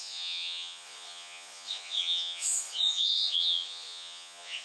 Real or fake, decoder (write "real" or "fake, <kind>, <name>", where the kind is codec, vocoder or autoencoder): fake, vocoder, Vocos